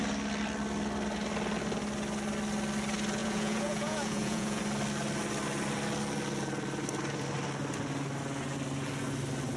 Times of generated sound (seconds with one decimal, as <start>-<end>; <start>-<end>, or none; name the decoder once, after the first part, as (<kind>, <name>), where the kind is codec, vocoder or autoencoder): 3.2-4.6 (vocoder, Vocos)